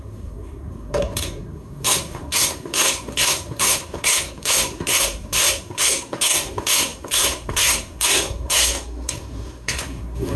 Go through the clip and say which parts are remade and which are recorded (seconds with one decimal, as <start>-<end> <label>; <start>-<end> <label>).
0.0-10.4 remade